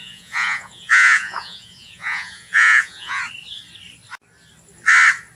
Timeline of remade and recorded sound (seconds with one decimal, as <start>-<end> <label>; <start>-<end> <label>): 0.0-3.2 remade; 3.2-5.4 recorded